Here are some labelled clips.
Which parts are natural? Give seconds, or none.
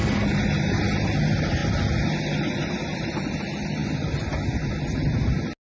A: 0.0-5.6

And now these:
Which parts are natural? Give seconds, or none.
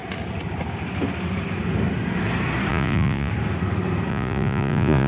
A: 0.0-2.7; 3.3-4.1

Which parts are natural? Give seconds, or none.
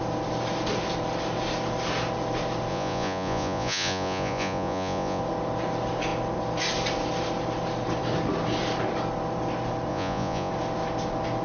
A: 0.0-2.7; 5.2-9.9; 10.5-11.4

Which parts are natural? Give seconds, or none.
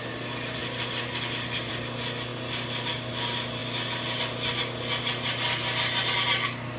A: 0.0-6.8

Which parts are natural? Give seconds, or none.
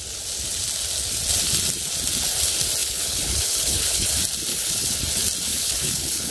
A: 0.0-2.8; 4.1-4.5; 5.0-5.5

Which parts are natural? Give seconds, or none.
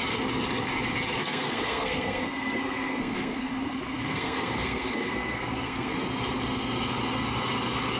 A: 0.0-1.2; 3.5-4.0; 5.9-8.0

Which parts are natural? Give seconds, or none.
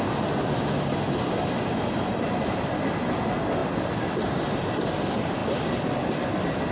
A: 0.0-6.7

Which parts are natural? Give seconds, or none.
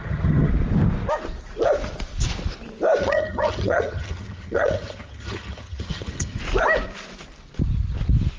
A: 0.5-3.0; 6.4-8.4